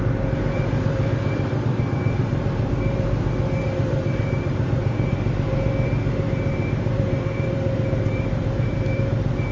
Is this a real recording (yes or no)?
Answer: no